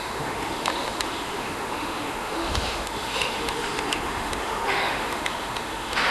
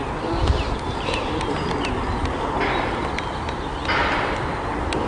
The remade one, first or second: first